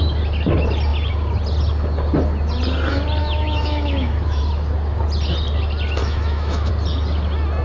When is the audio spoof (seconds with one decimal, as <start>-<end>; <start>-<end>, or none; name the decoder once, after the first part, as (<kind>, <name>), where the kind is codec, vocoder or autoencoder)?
3.2-4.4 (autoencoder, DAC-VAE); 6.0-6.7